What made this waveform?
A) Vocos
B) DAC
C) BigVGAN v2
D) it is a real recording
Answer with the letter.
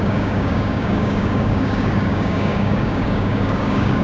B